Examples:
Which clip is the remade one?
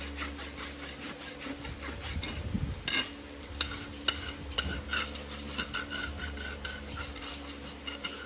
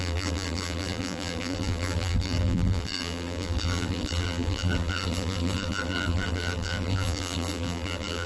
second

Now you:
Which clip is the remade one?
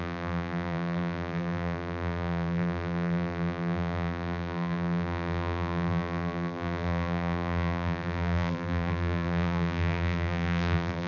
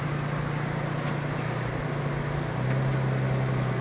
first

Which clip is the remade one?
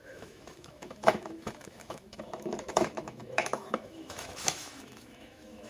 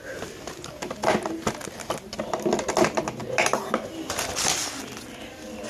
first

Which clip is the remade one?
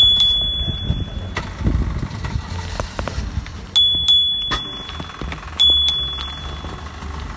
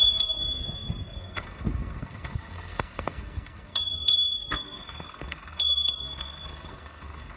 second